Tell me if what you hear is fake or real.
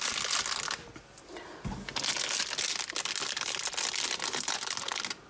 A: real